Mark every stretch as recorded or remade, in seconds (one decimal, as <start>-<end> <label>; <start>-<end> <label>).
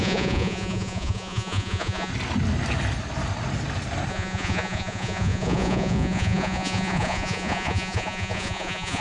0.0-2.1 remade; 2.1-4.1 recorded; 4.1-9.0 remade